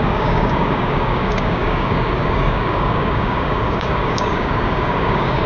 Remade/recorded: remade